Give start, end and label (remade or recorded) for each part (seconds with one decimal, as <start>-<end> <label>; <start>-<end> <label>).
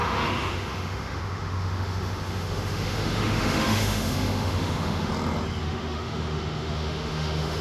0.0-5.1 remade; 5.1-5.6 recorded; 5.6-7.6 remade